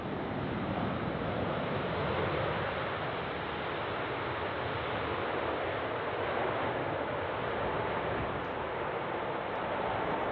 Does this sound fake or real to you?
real